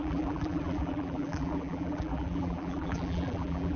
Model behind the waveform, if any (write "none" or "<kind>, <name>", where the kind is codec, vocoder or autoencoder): vocoder, BigVGAN v2